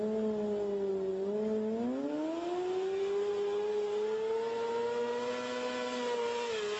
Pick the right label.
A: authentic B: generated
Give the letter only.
A